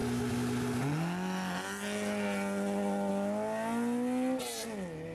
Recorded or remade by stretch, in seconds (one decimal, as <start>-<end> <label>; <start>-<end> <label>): 0.0-5.1 recorded